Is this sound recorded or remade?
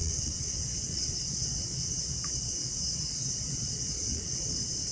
remade